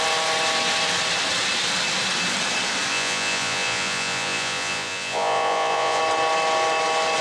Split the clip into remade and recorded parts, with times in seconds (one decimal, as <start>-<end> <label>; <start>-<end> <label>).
0.0-2.9 recorded; 2.9-6.0 remade; 6.0-7.2 recorded

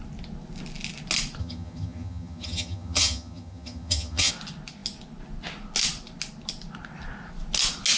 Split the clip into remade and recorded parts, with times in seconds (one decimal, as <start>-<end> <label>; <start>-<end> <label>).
0.0-1.4 recorded; 1.4-4.3 remade; 4.3-8.0 recorded

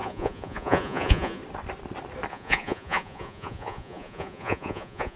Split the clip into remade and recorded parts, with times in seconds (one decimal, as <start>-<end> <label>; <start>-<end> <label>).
0.0-1.4 remade; 1.4-2.3 recorded; 2.3-5.2 remade

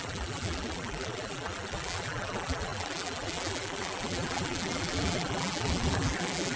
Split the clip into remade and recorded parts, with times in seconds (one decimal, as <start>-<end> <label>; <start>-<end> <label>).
0.0-6.6 remade

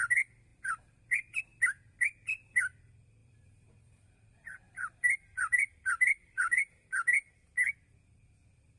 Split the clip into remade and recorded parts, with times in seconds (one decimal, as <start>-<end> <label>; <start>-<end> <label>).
0.0-0.5 recorded; 0.5-1.4 remade; 1.4-3.2 recorded; 3.2-5.7 remade; 5.7-6.2 recorded; 6.2-6.9 remade; 6.9-8.8 recorded

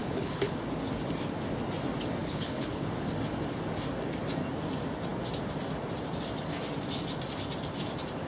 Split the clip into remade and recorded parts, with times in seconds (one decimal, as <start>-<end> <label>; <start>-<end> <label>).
0.0-0.5 remade; 0.5-2.2 recorded; 2.2-2.9 remade; 2.9-8.3 recorded

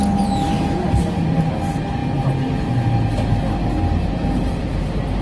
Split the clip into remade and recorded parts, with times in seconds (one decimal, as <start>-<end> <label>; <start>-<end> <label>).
0.0-5.2 recorded